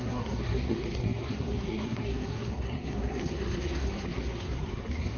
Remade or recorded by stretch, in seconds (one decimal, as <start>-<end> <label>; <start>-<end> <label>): 0.0-5.2 remade

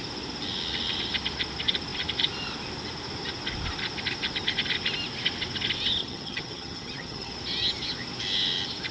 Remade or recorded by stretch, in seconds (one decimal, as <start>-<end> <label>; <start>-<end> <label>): 0.0-6.0 recorded; 6.0-7.3 remade; 7.3-8.9 recorded

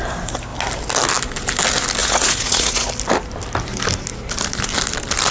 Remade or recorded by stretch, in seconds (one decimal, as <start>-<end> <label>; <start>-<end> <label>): 0.0-2.0 recorded; 2.0-2.9 remade; 2.9-5.3 recorded

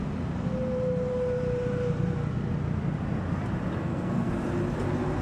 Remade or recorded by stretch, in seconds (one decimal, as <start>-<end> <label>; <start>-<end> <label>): 0.0-3.8 recorded; 3.8-4.3 remade; 4.3-5.2 recorded

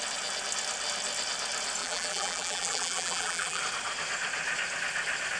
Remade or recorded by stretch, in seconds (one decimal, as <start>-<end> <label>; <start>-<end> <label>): 0.0-1.8 recorded; 1.8-3.6 remade; 3.6-5.4 recorded